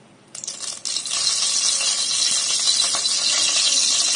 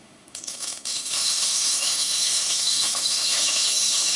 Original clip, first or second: first